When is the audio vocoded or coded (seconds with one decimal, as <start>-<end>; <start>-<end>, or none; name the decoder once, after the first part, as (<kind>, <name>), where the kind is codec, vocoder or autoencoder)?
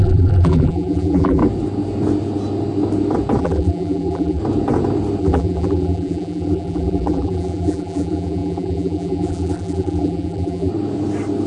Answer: 0.0-1.4 (vocoder, BigVGAN v2); 3.4-4.4; 5.2-10.7